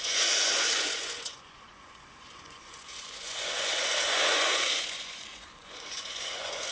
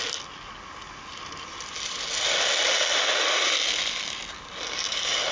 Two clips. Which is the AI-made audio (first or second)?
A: first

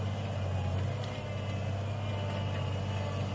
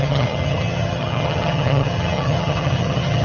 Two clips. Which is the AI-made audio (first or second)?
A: second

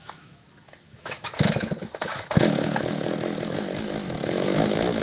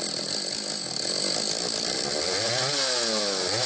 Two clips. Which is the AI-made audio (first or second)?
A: first